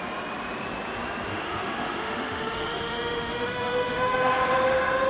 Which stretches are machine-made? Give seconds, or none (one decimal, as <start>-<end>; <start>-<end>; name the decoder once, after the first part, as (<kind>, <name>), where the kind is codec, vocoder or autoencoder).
1.3-4.4 (autoencoder, DAC-VAE)